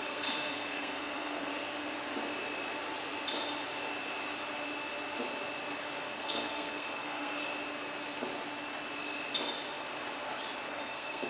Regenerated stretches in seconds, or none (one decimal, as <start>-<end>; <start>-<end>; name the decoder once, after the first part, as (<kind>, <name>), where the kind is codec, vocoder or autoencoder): 0.0-1.5 (codec, SNAC); 6.0-7.4; 10.7-11.3